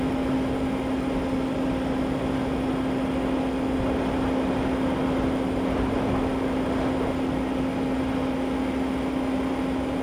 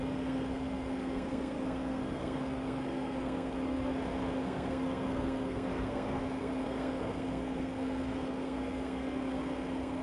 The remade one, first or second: second